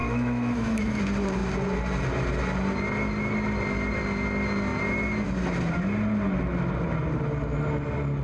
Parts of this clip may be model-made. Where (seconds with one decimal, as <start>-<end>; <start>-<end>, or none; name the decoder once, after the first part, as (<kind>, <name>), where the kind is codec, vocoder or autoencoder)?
0.0-1.0 (autoencoder, DAC-VAE)